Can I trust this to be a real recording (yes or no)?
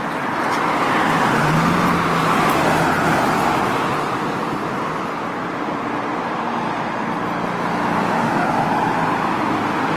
yes